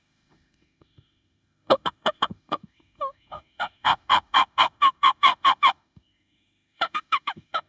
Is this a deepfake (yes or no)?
yes